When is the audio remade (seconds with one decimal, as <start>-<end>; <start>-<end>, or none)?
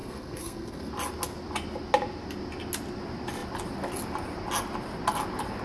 0.0-0.9